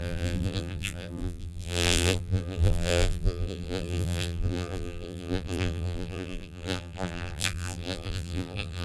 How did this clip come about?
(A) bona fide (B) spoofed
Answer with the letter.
B